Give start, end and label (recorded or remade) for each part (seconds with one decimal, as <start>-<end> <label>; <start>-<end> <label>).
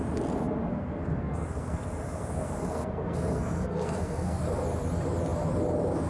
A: 0.0-0.7 recorded; 0.7-4.4 remade; 4.4-6.1 recorded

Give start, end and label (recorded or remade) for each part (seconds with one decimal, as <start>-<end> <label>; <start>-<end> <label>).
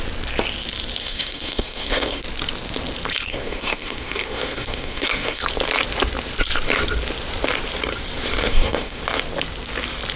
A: 0.0-1.0 recorded; 1.0-2.2 remade; 2.2-3.3 recorded; 3.3-5.4 remade; 5.4-8.4 recorded; 8.4-9.0 remade; 9.0-10.2 recorded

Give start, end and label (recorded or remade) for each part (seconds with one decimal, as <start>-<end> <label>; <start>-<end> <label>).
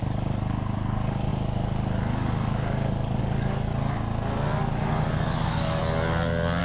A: 0.0-3.7 remade; 3.7-4.7 recorded; 4.7-5.8 remade; 5.8-6.6 recorded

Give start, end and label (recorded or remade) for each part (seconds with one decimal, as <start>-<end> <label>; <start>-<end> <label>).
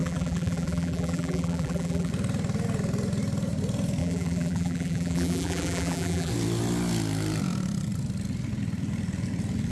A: 0.0-2.1 remade; 2.1-4.0 recorded; 4.0-6.3 remade; 6.3-9.7 recorded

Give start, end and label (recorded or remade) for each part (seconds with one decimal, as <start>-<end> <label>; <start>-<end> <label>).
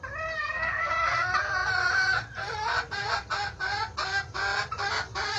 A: 0.0-0.4 recorded; 0.4-0.9 remade; 0.9-5.4 recorded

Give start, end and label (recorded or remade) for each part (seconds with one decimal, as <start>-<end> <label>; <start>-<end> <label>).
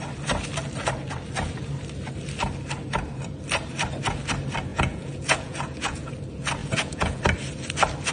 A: 0.0-4.7 recorded; 4.7-6.1 remade; 6.1-6.6 recorded; 6.6-7.2 remade; 7.2-8.1 recorded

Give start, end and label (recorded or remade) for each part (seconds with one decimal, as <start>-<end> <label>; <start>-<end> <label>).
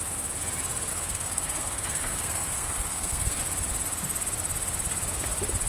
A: 0.0-0.9 recorded; 0.9-3.4 remade; 3.4-5.7 recorded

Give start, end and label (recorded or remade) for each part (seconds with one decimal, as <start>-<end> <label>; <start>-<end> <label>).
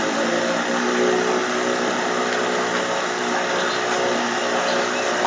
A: 0.0-5.3 recorded